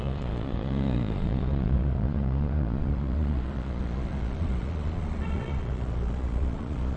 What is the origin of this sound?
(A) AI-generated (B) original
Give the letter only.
A